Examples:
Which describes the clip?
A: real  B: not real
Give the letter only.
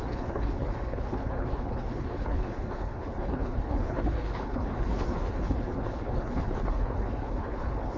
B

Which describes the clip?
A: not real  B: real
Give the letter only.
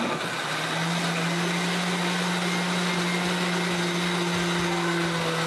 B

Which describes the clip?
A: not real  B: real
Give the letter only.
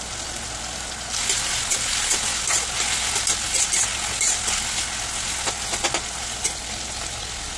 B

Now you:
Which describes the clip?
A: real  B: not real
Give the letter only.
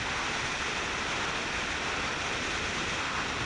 A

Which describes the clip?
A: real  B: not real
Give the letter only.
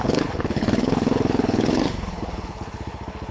B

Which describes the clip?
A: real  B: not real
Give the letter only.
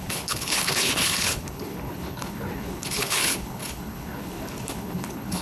B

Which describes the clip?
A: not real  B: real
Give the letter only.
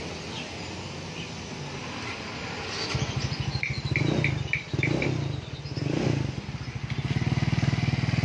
B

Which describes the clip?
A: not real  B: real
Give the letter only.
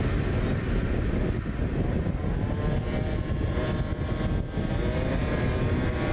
B